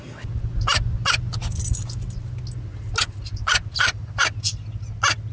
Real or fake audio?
real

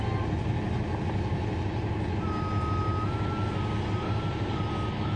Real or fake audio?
real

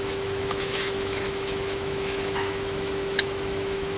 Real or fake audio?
fake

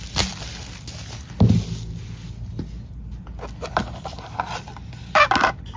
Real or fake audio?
real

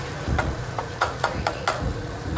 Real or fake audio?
fake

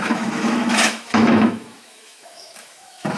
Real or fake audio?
fake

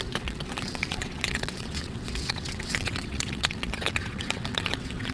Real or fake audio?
fake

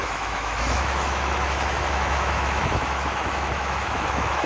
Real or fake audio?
fake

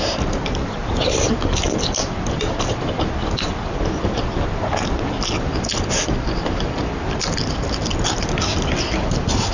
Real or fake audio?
real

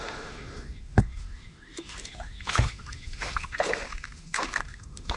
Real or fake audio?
fake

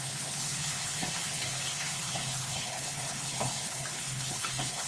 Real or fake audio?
fake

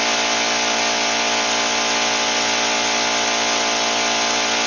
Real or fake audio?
real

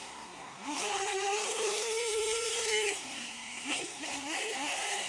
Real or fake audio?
fake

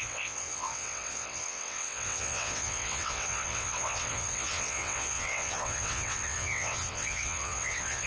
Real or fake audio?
fake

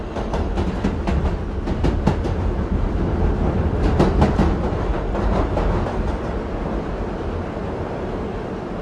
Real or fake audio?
fake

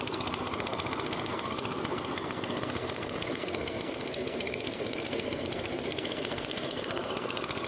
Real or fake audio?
fake